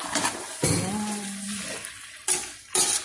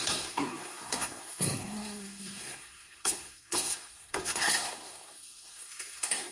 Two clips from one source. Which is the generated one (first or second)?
second